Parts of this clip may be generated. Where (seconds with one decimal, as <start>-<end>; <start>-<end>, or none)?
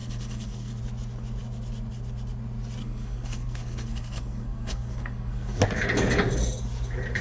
0.0-0.8; 2.8-5.6